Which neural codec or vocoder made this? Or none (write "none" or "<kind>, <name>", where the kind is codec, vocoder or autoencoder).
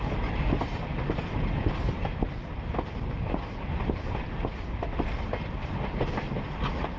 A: none